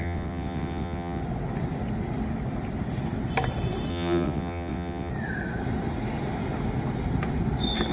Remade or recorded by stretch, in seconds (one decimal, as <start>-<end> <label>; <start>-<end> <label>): 0.0-1.2 remade; 1.2-3.9 recorded; 3.9-5.1 remade; 5.1-7.9 recorded